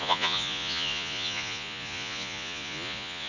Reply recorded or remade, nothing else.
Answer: remade